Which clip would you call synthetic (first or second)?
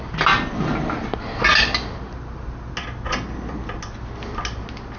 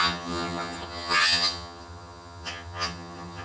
second